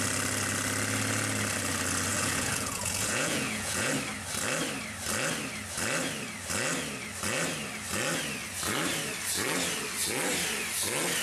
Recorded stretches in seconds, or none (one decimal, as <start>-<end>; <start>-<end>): 0.0-2.1; 3.9-11.2